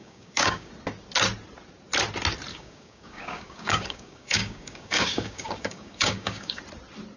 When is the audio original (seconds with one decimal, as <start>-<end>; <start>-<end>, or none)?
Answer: 0.7-2.5; 6.6-7.2